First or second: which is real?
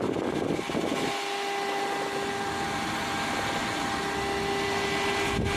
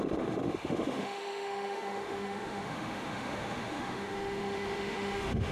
first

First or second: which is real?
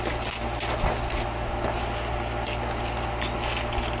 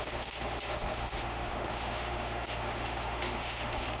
first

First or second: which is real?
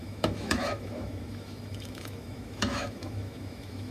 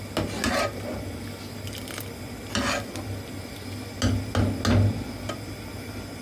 second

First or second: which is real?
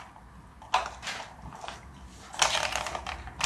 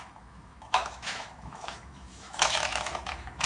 first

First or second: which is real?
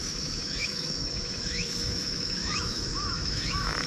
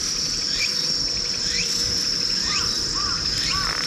second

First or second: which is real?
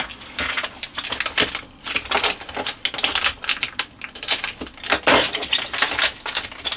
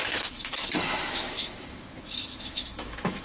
first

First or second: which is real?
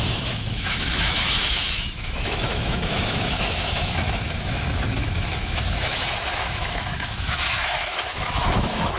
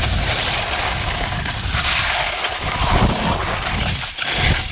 second